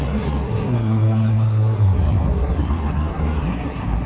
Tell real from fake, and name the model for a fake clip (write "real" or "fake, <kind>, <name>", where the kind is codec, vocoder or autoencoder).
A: fake, codec, SNAC